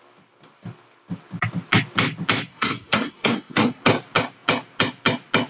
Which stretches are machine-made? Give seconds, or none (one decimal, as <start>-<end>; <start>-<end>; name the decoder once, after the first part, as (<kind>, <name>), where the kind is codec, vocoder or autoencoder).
2.5-3.8 (codec, SNAC)